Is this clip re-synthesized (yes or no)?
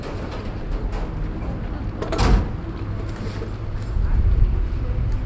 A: no